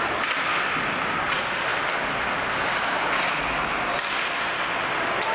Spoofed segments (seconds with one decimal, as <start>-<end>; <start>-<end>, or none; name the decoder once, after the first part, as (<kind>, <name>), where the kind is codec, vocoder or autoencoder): none